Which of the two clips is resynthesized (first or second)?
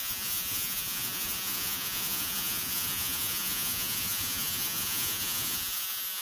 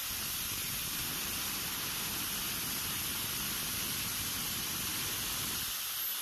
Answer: first